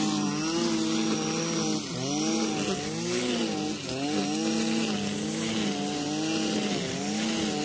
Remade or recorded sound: recorded